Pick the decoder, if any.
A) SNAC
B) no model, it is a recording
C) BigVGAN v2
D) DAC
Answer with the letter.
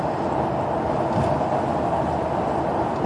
B